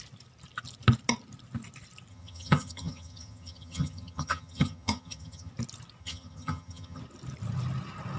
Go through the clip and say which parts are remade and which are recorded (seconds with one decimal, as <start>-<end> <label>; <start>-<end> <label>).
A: 0.0-2.1 recorded; 2.1-5.5 remade; 5.5-6.0 recorded; 6.0-7.0 remade; 7.0-8.2 recorded